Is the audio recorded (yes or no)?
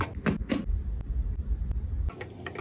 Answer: yes